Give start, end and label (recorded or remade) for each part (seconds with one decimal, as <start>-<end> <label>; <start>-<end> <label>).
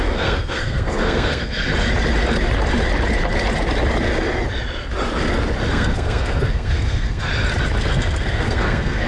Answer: 0.0-1.7 remade; 1.7-5.7 recorded; 5.7-7.3 remade; 7.3-7.9 recorded; 7.9-9.1 remade